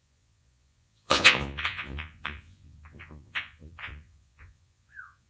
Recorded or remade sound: remade